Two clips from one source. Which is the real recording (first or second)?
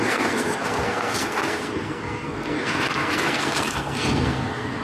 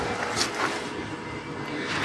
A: second